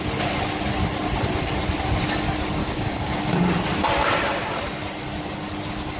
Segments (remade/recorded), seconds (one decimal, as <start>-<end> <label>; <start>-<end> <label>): 0.0-2.6 recorded; 2.6-3.2 remade; 3.2-6.0 recorded